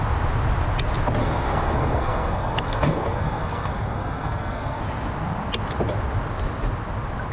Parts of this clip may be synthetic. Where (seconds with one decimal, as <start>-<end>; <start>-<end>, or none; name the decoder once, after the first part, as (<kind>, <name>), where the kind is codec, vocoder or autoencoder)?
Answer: 1.2-4.8 (codec, SNAC)